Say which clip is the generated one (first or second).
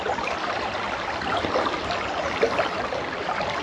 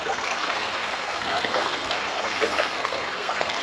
second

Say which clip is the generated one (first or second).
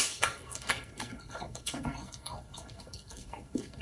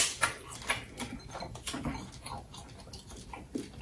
first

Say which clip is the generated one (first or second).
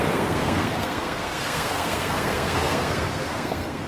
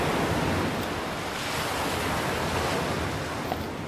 first